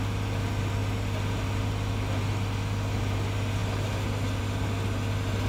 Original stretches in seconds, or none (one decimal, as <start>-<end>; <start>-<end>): 0.0-5.5